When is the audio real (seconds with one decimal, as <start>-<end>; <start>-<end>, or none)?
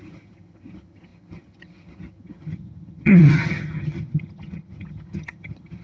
none